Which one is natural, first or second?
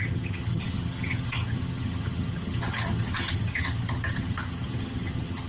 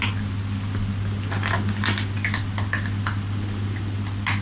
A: second